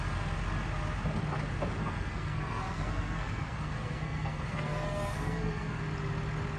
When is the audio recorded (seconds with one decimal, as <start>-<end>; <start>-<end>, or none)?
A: 0.0-1.8; 5.8-6.6